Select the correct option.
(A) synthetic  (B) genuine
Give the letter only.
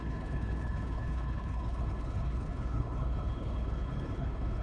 A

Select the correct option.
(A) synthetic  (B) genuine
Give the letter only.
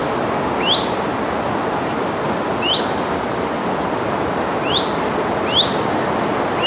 B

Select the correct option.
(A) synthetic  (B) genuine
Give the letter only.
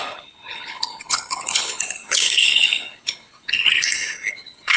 A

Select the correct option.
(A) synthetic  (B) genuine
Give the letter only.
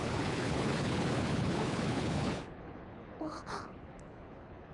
A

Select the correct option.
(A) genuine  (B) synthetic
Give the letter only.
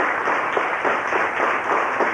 A